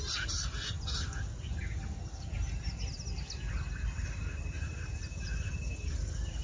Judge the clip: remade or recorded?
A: recorded